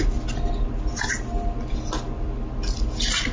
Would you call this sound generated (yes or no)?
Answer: no